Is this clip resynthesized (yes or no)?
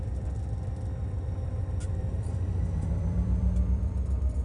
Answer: yes